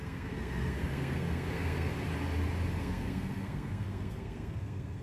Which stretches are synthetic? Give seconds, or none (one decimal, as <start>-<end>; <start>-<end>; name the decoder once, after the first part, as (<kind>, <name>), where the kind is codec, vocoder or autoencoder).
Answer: 0.0-1.9 (codec, SNAC); 2.8-5.0

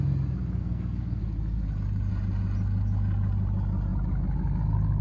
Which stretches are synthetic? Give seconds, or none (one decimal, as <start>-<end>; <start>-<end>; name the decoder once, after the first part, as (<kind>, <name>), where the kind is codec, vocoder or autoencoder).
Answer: 0.6-1.2 (codec, SNAC)

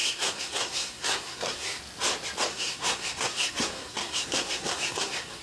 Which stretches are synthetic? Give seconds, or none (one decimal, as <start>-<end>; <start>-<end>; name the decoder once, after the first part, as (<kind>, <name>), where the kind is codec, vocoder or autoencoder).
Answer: 0.0-1.8 (codec, SNAC); 2.5-5.4

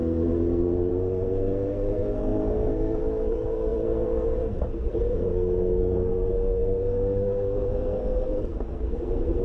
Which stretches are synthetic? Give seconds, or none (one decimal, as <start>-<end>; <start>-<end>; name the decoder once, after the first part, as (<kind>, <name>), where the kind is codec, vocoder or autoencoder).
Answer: 0.0-9.4 (codec, SNAC)

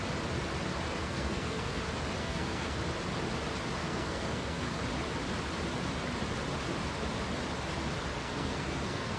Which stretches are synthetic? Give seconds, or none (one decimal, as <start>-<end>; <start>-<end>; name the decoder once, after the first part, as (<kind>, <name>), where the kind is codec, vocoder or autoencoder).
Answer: 1.0-1.8 (codec, SNAC); 2.2-2.8; 3.8-4.8; 8.1-9.2

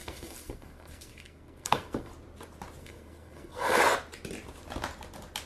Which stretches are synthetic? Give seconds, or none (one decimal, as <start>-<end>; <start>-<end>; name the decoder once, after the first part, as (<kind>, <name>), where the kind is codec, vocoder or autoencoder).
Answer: 0.0-2.1 (codec, SNAC); 2.8-3.8